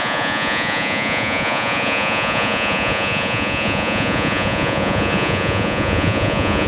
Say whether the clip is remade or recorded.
remade